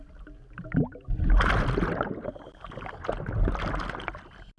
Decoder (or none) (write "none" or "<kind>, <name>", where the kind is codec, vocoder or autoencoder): none